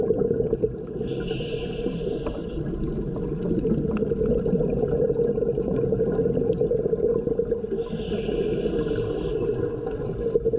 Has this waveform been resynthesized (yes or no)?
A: no